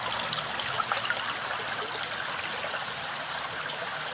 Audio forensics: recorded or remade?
recorded